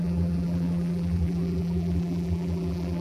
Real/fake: fake